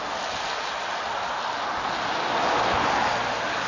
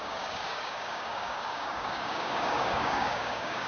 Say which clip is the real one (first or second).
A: first